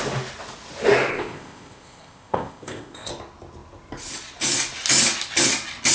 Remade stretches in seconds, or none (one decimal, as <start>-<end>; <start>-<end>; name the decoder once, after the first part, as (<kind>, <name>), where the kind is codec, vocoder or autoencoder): 1.1-3.1 (codec, ZipCodec)